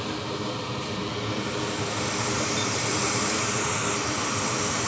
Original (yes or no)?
no